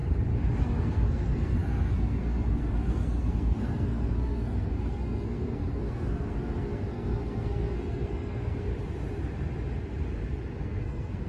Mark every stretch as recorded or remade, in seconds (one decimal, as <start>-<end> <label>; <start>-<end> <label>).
0.0-0.6 recorded; 0.6-8.7 remade; 8.7-10.6 recorded; 10.6-11.3 remade